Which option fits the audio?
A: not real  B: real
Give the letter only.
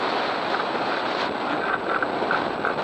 B